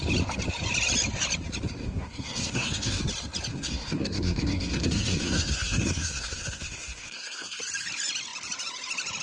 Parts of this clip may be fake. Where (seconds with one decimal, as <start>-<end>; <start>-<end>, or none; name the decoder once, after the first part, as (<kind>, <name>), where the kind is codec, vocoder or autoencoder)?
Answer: 1.8-3.0 (codec, SNAC); 3.5-7.6